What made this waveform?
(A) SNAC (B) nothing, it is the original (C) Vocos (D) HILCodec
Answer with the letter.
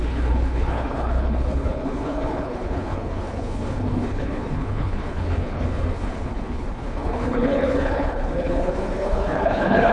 D